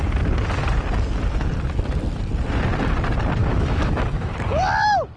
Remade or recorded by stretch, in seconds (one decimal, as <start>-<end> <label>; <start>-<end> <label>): 0.0-3.4 recorded; 3.4-4.3 remade; 4.3-5.2 recorded